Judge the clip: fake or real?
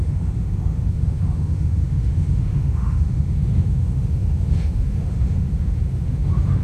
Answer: fake